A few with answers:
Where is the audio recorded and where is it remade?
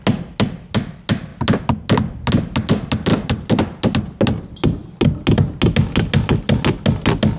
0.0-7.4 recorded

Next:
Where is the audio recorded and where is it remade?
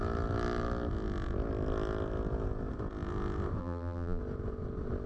0.0-3.6 recorded; 3.6-4.2 remade; 4.2-5.1 recorded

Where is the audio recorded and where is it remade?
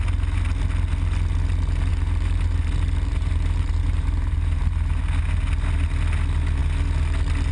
0.0-1.9 recorded; 1.9-5.0 remade; 5.0-7.5 recorded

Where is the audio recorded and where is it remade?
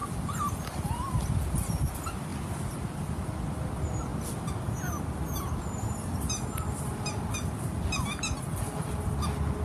0.0-9.6 recorded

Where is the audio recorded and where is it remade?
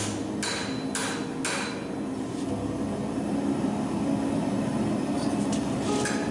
0.0-6.3 recorded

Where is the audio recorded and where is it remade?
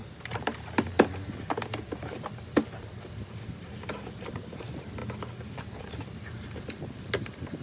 0.0-7.6 remade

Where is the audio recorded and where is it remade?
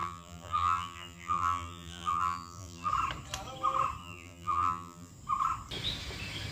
0.0-2.9 remade; 2.9-4.0 recorded; 4.0-5.1 remade; 5.1-6.5 recorded